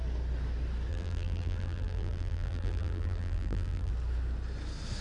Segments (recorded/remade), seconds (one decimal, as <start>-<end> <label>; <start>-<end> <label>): 0.0-0.9 recorded; 0.9-3.9 remade; 3.9-5.0 recorded